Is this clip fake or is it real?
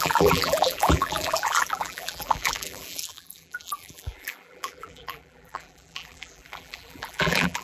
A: fake